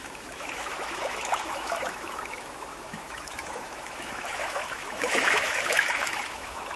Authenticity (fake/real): fake